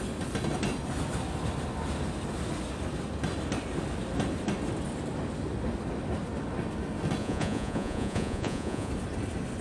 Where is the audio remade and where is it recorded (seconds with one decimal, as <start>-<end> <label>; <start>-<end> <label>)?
0.0-7.2 recorded; 7.2-8.9 remade; 8.9-9.6 recorded